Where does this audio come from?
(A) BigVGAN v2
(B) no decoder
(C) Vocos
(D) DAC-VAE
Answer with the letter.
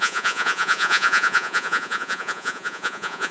C